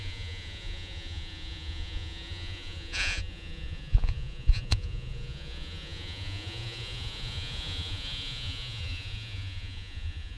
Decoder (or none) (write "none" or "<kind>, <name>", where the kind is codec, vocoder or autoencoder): vocoder, Vocos